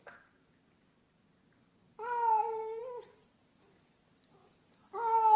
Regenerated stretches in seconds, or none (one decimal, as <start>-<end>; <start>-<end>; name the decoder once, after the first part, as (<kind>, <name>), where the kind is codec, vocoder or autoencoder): none